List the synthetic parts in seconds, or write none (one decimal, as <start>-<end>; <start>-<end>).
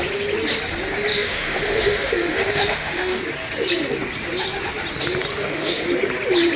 1.1-3.2; 5.3-5.8